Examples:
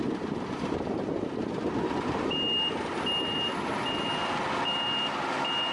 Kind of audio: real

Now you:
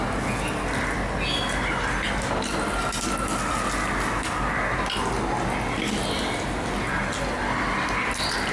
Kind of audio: real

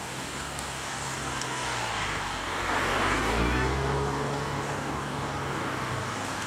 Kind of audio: fake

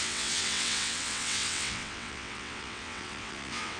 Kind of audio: fake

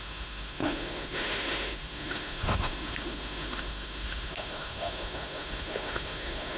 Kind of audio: fake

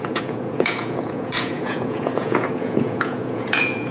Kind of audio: fake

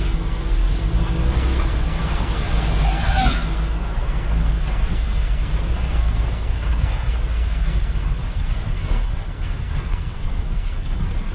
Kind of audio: fake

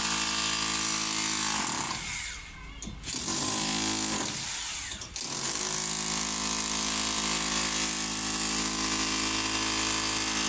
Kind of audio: real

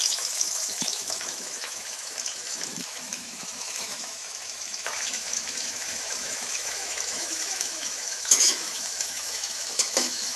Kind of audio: fake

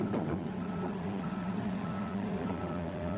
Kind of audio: fake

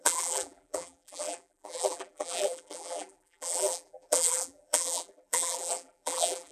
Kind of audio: fake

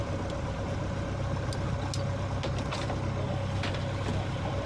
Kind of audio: real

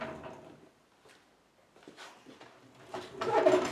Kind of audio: real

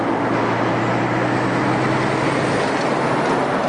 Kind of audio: real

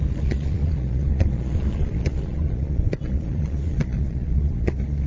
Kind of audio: fake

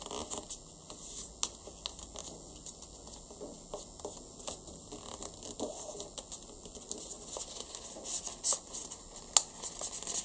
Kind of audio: real